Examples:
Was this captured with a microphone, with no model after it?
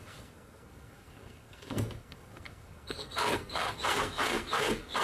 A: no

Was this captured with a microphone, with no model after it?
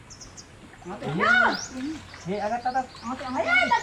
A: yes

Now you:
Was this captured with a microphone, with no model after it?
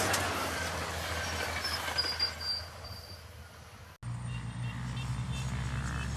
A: yes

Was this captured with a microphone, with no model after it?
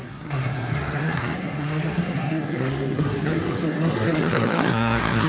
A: no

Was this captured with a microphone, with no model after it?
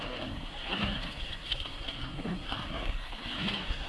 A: no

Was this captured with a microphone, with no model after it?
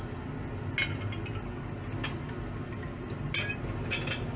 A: yes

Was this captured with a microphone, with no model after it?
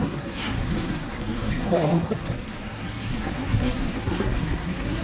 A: no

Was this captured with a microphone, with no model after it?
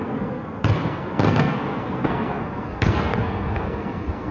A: no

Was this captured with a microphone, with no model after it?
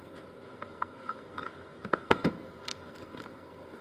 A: no